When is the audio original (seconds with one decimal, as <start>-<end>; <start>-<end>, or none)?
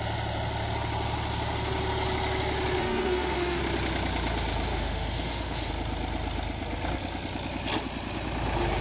0.0-2.8; 3.6-4.7; 5.7-8.8